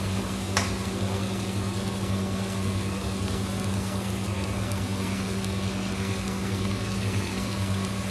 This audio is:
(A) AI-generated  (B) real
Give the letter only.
A